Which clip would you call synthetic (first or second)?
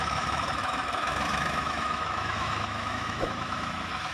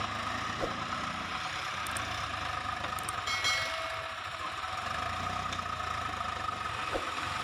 first